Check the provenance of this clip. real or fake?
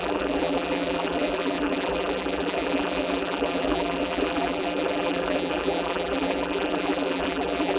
fake